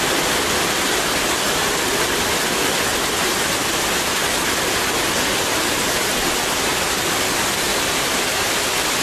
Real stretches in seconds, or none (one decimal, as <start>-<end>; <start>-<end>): 0.0-9.0